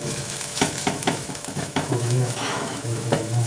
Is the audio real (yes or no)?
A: no